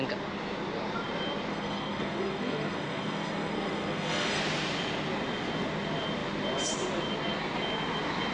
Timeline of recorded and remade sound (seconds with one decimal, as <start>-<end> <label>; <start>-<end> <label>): 0.0-1.5 recorded; 1.5-4.4 remade; 4.4-8.3 recorded